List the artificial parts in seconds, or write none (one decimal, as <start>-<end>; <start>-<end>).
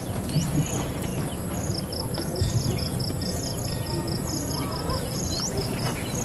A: 0.0-1.1; 4.8-6.2